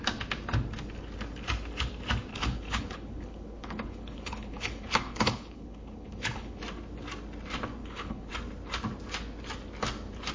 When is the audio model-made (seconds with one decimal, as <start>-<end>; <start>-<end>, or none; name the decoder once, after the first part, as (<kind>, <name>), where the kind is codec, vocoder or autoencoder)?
2.3-6.6 (codec, HILCodec); 7.8-8.3